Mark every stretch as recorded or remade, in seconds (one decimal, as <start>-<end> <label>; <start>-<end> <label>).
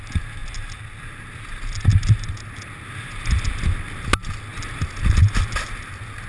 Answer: 0.0-6.3 recorded